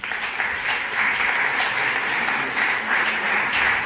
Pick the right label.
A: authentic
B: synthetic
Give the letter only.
A